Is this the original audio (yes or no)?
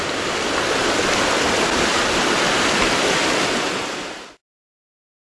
no